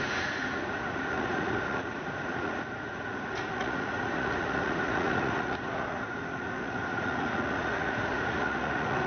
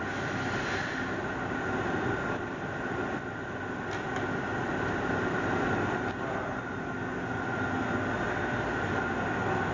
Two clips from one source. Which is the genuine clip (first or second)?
second